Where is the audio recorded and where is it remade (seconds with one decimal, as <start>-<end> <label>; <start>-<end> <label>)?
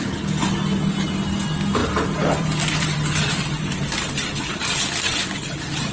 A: 0.0-1.8 recorded; 1.8-4.4 remade; 4.4-5.9 recorded